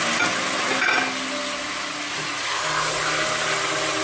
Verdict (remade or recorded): recorded